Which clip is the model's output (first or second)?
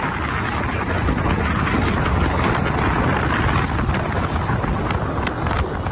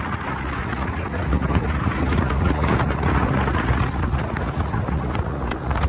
second